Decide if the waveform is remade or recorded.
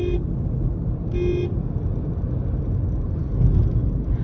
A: recorded